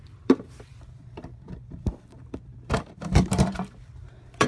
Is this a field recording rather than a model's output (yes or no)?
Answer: no